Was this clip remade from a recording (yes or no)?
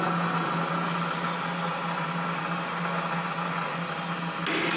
no